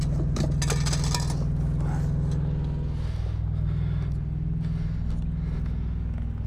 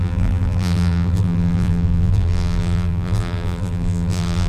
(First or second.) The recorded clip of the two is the first